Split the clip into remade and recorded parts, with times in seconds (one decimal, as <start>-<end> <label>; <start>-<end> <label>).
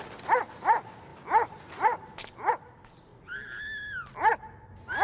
0.0-5.0 recorded